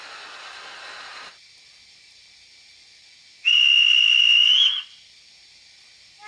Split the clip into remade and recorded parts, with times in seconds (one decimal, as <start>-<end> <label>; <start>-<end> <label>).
0.0-4.4 recorded; 4.4-5.3 remade; 5.3-6.3 recorded